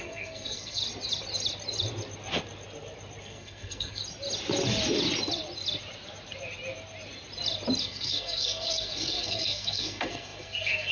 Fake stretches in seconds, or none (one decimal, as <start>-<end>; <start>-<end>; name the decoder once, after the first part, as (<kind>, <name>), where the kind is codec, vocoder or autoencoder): 0.0-0.8 (codec, SNAC); 3.2-4.0; 7.8-10.9